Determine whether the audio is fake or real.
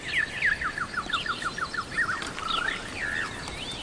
real